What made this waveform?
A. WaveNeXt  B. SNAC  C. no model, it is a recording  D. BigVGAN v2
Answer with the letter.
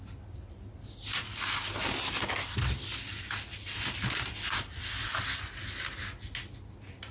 C